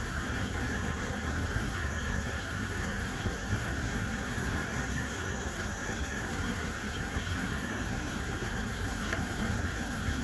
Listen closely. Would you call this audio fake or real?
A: fake